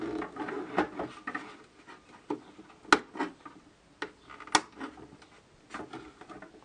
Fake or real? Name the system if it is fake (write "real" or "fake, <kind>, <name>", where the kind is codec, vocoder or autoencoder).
real